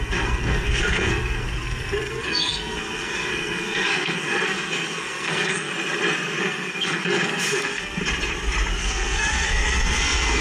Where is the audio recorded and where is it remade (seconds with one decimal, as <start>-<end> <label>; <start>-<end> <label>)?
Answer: 0.0-5.7 remade; 5.7-6.4 recorded; 6.4-8.0 remade; 8.0-8.8 recorded; 8.8-10.4 remade